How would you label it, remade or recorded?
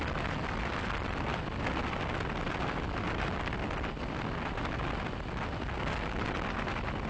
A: recorded